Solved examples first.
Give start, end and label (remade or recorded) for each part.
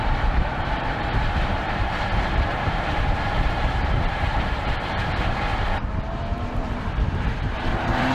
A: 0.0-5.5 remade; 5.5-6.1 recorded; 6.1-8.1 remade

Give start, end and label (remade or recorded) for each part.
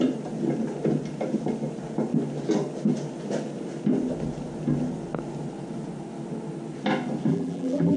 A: 0.0-7.3 recorded; 7.3-8.0 remade